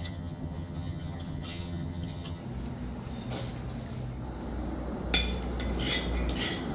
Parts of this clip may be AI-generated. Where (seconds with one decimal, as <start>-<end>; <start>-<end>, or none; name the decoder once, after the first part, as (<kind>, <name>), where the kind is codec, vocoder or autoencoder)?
0.0-2.4 (vocoder, HiFi-GAN)